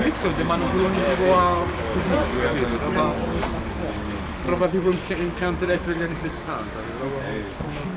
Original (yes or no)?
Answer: no